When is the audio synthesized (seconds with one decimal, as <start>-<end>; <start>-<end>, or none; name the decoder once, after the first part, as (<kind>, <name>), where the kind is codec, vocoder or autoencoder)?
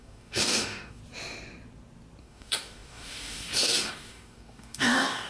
0.0-1.0 (codec, DAC); 2.2-5.3